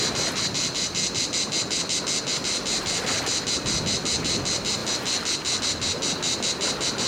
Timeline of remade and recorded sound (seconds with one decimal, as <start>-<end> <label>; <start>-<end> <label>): 0.0-7.1 recorded